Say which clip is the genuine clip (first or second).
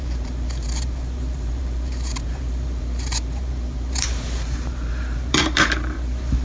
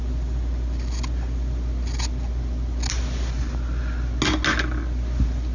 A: second